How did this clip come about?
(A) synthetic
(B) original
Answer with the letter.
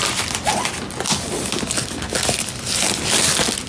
B